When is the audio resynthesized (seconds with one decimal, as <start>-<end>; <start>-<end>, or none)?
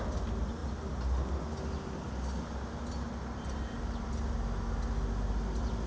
none